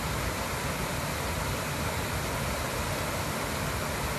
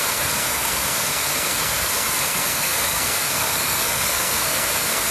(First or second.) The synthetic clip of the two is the second